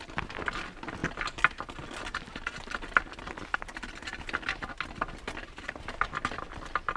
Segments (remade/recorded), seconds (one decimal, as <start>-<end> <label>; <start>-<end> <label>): 0.0-7.0 recorded